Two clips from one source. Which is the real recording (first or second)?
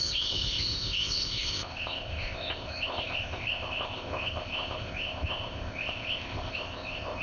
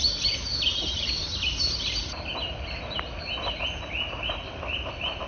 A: second